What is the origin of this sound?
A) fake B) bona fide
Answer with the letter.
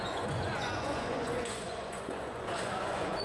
A